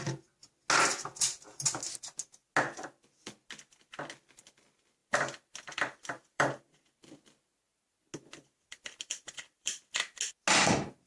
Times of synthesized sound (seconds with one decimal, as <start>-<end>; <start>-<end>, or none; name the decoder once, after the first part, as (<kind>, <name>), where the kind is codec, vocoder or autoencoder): 5.0-6.6 (vocoder, BigVGAN v2); 8.7-9.8